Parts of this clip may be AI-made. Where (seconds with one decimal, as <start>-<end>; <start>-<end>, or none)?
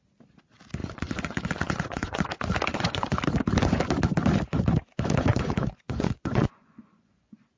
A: 0.8-2.2; 2.7-3.2; 5.3-7.6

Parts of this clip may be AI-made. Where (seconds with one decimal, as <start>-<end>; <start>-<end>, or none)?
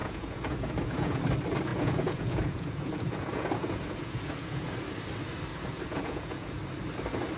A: 0.0-1.2; 1.7-4.7; 5.5-6.6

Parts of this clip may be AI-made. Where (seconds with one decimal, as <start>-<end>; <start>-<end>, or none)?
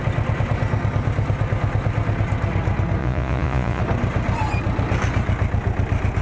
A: 3.0-3.8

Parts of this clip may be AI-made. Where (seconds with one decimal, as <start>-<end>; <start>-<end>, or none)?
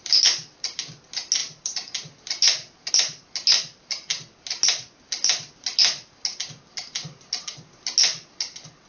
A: none